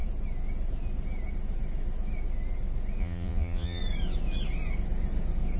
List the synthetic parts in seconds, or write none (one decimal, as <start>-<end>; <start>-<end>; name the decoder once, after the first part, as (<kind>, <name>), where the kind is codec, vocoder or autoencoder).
3.0-3.8 (vocoder, Vocos)